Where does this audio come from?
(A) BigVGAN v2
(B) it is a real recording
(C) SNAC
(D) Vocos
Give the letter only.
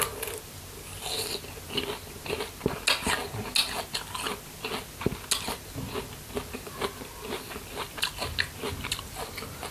B